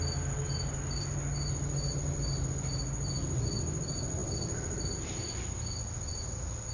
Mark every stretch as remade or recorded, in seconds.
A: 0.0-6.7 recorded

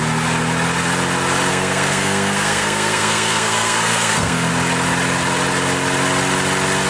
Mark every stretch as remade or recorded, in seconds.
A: 0.0-1.5 recorded; 1.5-4.5 remade; 4.5-6.9 recorded

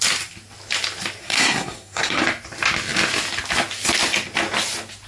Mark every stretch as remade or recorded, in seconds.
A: 0.0-1.2 recorded; 1.2-2.2 remade; 2.2-5.1 recorded

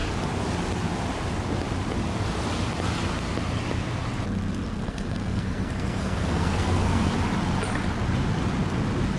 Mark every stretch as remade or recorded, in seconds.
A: 0.0-4.7 recorded; 4.7-7.1 remade; 7.1-9.2 recorded

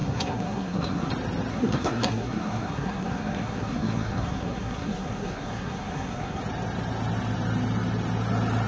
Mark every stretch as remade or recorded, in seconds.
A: 0.0-1.1 remade; 1.1-1.5 recorded; 1.5-6.4 remade; 6.4-8.7 recorded

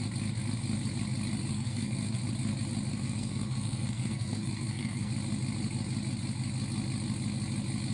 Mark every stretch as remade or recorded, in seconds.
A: 0.0-1.5 recorded; 1.5-2.2 remade; 2.2-2.9 recorded; 2.9-5.1 remade; 5.1-7.9 recorded

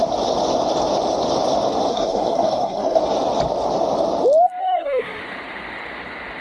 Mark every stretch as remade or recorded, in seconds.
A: 0.0-1.9 recorded; 1.9-3.0 remade; 3.0-4.6 recorded; 4.6-5.2 remade; 5.2-6.4 recorded

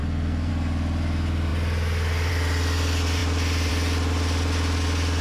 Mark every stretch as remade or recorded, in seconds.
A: 0.0-0.5 remade; 0.5-5.2 recorded